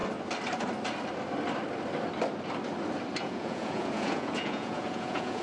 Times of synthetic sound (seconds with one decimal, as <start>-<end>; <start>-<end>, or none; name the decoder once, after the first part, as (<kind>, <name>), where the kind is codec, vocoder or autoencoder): 3.2-5.4 (vocoder, Vocos)